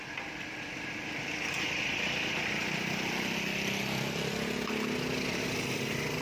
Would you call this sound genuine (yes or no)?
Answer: yes